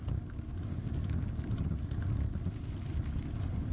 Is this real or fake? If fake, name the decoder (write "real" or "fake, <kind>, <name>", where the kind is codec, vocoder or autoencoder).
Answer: real